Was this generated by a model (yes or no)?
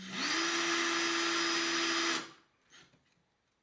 no